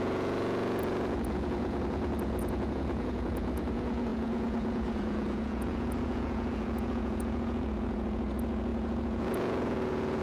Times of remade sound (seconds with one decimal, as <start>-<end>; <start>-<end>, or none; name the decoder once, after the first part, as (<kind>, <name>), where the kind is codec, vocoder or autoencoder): 0.0-10.2 (vocoder, Vocos)

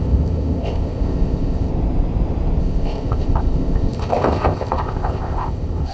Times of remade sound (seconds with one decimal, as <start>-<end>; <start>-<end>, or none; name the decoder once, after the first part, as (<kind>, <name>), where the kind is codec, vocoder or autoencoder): 0.0-1.7 (codec, ZipCodec); 2.6-5.9

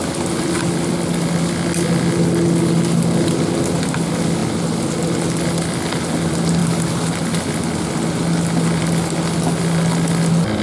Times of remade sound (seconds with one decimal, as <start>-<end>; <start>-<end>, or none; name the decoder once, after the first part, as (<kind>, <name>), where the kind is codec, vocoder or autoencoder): none

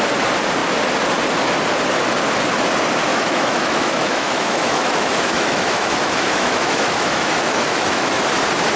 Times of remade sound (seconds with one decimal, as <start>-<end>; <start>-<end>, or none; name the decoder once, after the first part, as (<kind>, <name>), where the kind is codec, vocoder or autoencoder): 3.1-8.2 (autoencoder, DAC-VAE)

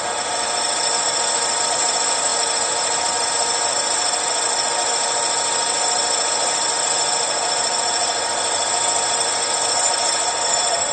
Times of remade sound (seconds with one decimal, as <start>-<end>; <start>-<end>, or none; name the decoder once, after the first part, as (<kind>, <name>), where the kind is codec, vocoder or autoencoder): none

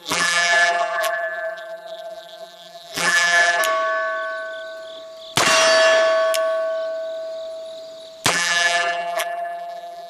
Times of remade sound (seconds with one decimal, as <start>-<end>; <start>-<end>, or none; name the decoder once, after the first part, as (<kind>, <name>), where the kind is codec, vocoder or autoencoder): 0.0-3.6 (vocoder, BigVGAN v2); 8.3-10.1

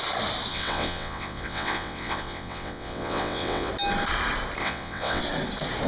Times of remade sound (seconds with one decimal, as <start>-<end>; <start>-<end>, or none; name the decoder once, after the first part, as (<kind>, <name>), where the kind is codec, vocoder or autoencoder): 0.5-3.7 (vocoder, WaveNeXt); 4.6-5.2